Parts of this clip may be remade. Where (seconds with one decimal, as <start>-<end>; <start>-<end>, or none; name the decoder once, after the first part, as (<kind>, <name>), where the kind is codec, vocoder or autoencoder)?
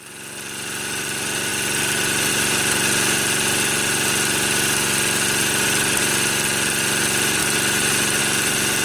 none